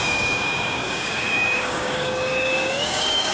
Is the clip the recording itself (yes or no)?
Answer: no